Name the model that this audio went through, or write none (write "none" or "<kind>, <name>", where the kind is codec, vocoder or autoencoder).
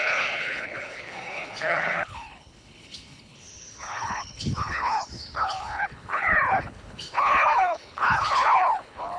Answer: codec, HILCodec